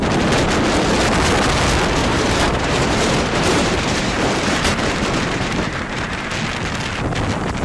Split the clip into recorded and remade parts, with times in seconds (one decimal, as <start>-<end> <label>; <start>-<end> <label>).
0.0-2.0 recorded; 2.0-6.3 remade; 6.3-7.6 recorded